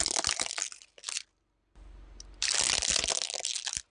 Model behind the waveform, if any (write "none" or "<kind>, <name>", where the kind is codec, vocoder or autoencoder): none